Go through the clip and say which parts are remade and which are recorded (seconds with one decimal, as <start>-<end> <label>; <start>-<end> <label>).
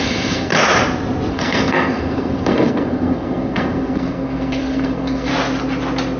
0.0-0.5 remade; 0.5-1.3 recorded; 1.3-5.3 remade; 5.3-6.2 recorded